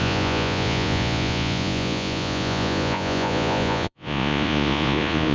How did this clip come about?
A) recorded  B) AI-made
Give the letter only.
B